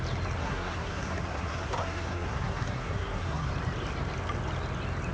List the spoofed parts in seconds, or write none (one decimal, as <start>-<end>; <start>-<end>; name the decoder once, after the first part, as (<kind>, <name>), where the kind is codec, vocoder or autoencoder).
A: 0.4-3.5 (codec, SNAC)